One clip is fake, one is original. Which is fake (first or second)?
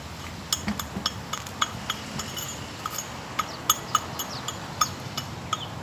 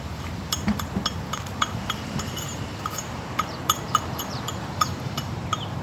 second